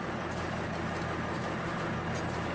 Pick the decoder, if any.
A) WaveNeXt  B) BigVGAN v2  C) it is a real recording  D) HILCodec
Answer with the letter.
C